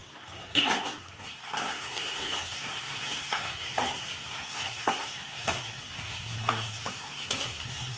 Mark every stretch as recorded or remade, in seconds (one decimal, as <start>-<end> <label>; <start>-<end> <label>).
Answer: 0.0-8.0 remade